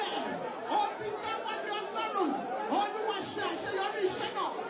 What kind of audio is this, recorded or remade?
recorded